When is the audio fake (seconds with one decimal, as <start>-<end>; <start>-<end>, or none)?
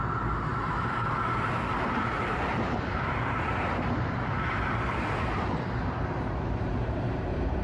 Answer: 0.0-7.6